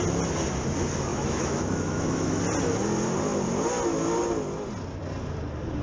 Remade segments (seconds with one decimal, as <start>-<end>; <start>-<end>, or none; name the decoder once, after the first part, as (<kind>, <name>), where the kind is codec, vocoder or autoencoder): 1.1-2.4 (autoencoder, DAC-VAE)